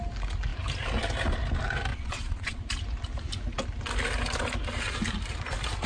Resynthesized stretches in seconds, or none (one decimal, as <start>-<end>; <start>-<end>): 1.9-2.6